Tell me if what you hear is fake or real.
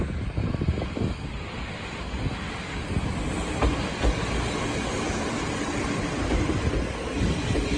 real